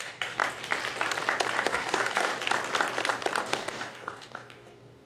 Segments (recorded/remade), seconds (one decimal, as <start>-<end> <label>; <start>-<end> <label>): 0.0-0.4 remade; 0.4-1.6 recorded; 1.6-2.3 remade; 2.3-3.4 recorded; 3.4-5.1 remade